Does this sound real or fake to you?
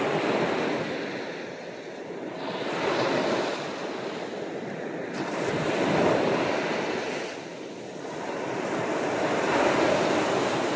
real